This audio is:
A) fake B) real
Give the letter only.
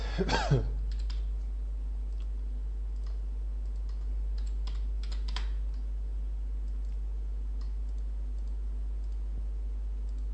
B